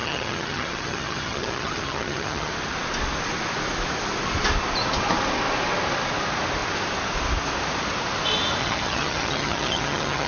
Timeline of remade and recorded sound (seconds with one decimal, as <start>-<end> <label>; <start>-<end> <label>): 0.0-2.5 remade; 2.5-8.6 recorded; 8.6-10.3 remade